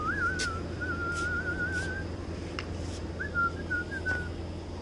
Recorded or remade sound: recorded